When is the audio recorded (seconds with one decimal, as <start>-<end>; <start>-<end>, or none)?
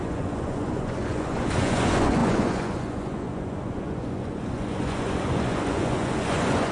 none